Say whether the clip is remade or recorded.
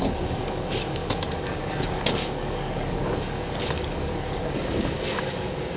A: remade